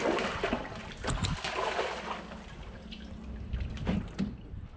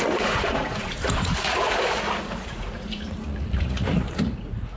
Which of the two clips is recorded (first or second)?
first